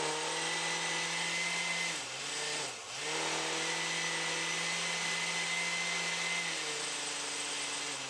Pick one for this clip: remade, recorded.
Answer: recorded